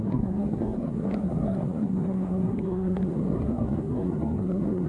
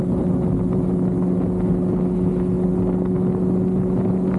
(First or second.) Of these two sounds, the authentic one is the second